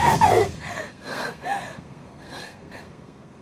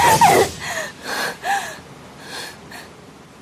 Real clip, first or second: second